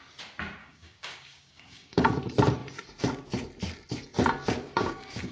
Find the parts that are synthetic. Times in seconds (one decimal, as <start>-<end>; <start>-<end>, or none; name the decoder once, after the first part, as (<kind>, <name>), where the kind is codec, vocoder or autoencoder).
0.6-2.1 (codec, DAC); 4.6-5.3